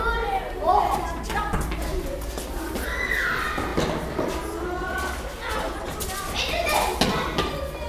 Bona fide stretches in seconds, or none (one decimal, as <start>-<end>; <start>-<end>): 0.0-7.9